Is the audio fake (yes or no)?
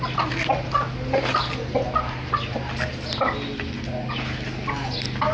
no